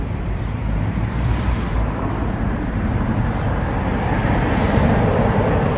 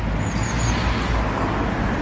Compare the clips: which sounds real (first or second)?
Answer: second